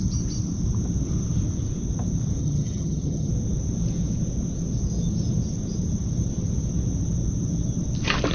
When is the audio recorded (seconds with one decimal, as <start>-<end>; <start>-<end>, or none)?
0.0-2.4; 3.3-8.3